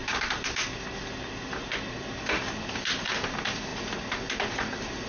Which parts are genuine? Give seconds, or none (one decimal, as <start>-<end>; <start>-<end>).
0.0-5.1